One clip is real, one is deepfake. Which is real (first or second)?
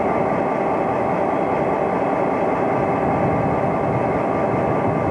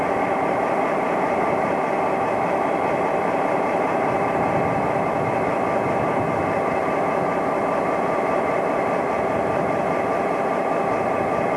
first